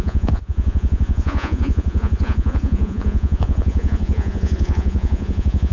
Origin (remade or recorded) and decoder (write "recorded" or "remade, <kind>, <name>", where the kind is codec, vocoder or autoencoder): remade, vocoder, Vocos